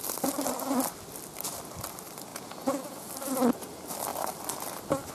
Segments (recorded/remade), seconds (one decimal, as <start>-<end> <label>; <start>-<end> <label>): 0.0-2.3 recorded; 2.3-3.1 remade; 3.1-5.1 recorded